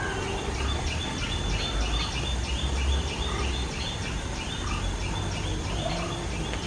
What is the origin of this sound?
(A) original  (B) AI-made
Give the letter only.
A